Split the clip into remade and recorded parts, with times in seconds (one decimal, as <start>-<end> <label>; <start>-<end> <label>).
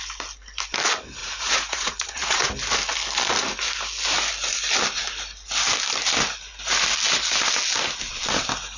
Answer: 0.0-1.2 recorded; 1.2-2.5 remade; 2.5-8.8 recorded